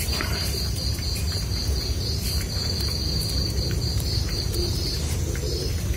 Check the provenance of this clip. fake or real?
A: fake